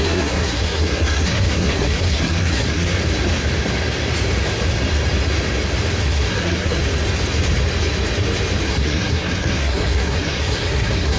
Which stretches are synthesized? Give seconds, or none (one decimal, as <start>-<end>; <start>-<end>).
0.0-3.0; 6.0-6.8; 8.7-11.2